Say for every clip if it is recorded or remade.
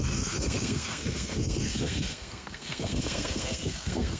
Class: remade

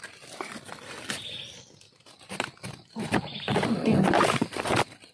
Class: recorded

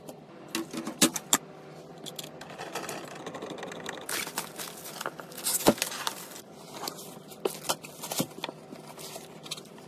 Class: recorded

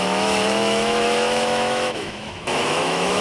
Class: remade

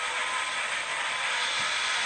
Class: recorded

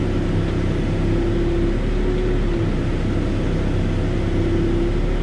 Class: recorded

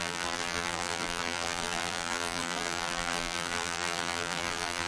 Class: remade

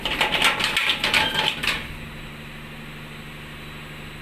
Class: recorded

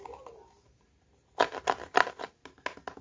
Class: recorded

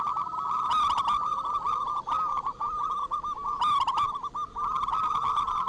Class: recorded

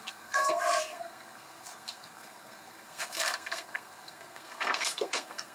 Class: remade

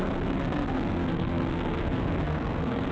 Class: remade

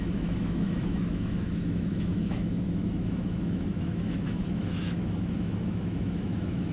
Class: remade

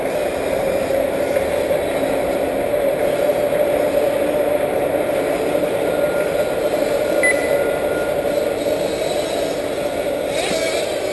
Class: recorded